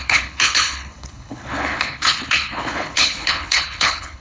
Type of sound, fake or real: fake